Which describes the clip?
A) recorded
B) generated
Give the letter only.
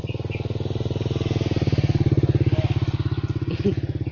A